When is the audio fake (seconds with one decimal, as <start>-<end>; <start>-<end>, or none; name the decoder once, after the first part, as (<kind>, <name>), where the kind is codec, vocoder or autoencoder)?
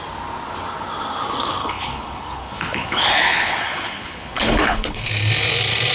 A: 1.6-5.1 (codec, HILCodec)